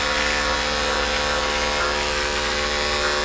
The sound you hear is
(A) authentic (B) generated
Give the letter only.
A